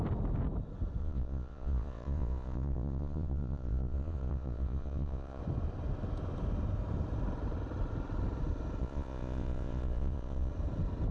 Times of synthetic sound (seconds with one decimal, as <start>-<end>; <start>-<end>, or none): 1.0-5.4; 8.8-10.5